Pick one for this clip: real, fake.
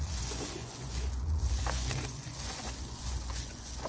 fake